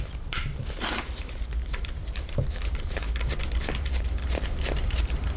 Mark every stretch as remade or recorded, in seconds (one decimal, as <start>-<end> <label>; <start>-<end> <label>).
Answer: 0.0-3.0 remade; 3.0-3.7 recorded; 3.7-5.4 remade